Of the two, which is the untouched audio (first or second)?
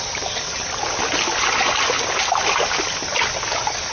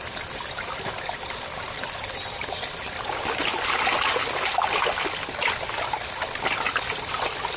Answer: first